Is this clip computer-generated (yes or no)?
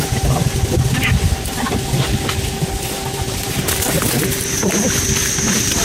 yes